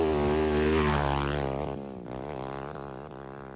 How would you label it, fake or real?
real